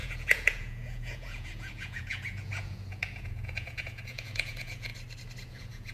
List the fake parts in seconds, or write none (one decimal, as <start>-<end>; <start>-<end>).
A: 0.0-4.9; 5.5-5.9